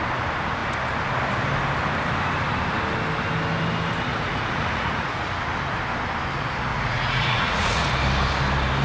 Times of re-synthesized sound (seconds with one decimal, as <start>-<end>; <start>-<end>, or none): 4.1-5.4; 6.7-7.9